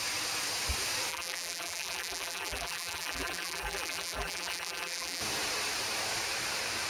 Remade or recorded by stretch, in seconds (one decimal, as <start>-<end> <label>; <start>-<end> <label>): 0.0-1.1 recorded; 1.1-5.2 remade; 5.2-6.9 recorded